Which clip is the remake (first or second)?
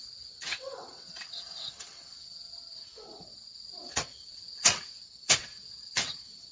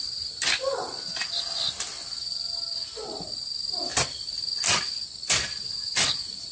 first